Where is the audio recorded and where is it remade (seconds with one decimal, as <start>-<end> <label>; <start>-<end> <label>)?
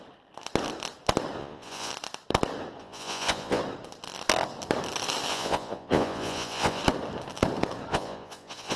0.0-1.4 recorded; 1.4-1.9 remade; 1.9-2.8 recorded; 2.8-3.6 remade; 3.6-5.3 recorded; 5.3-6.8 remade; 6.8-7.9 recorded; 7.9-8.8 remade